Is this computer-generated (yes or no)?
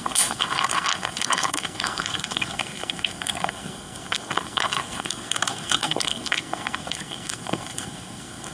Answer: yes